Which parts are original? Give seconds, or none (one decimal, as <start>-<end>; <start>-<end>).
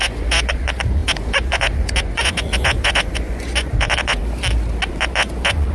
4.2-4.9